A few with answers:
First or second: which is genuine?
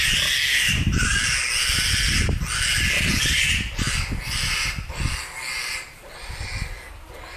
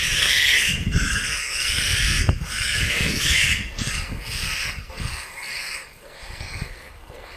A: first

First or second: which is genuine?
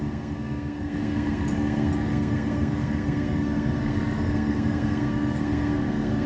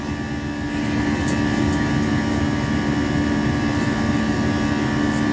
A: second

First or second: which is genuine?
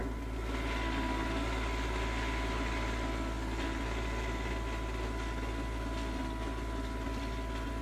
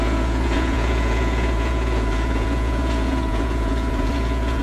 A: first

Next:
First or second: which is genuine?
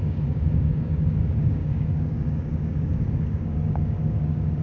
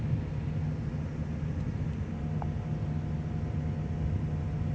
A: second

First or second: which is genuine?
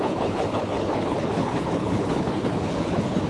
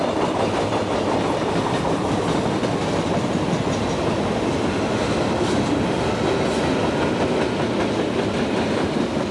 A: second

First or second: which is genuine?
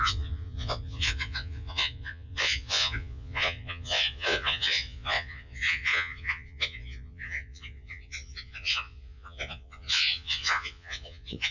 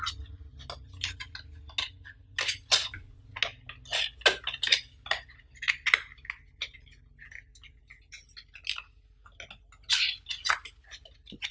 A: second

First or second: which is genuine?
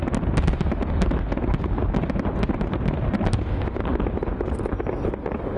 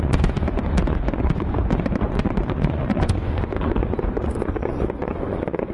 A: first